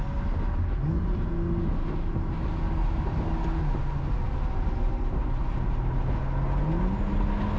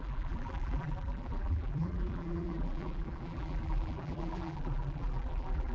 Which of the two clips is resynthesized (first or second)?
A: second